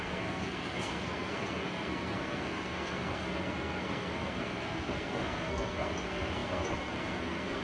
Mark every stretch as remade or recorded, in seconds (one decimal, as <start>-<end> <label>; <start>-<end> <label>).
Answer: 0.0-7.6 remade